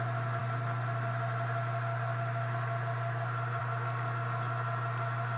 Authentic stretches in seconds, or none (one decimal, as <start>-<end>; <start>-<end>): 0.0-5.4